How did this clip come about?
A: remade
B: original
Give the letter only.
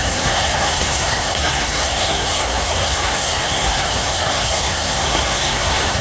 A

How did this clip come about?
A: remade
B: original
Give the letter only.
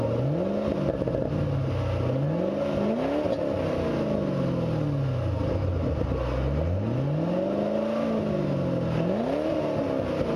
B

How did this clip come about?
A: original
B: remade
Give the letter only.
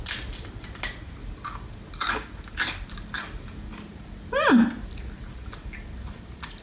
A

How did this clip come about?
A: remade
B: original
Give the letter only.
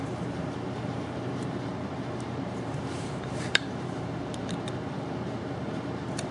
A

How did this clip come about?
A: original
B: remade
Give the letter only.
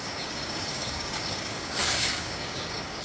B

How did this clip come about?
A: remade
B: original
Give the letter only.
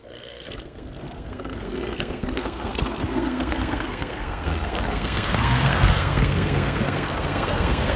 A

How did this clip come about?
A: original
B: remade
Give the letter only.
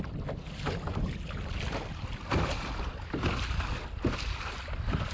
A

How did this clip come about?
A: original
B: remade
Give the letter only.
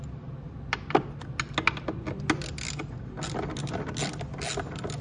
A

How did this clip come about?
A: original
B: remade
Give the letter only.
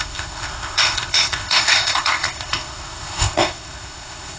B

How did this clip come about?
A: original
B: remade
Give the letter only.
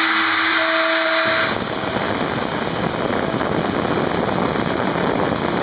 A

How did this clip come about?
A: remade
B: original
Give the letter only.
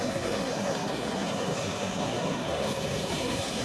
A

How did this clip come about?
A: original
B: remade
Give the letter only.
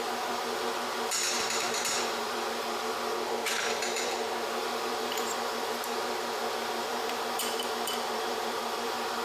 B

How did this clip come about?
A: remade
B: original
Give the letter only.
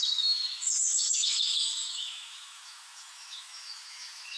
A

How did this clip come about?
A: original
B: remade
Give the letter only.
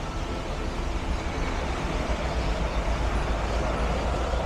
A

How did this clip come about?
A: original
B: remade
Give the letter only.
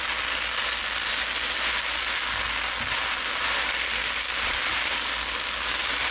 A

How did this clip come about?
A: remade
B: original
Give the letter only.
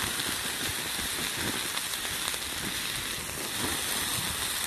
B